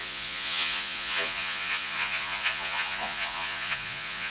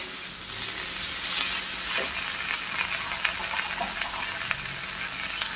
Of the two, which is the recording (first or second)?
second